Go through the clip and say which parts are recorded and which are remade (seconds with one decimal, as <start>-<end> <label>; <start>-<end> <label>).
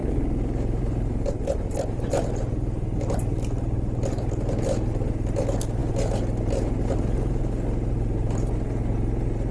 0.0-9.5 recorded